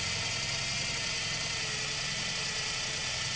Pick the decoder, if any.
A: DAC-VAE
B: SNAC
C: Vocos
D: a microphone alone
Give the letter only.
D